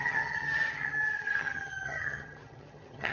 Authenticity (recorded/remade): remade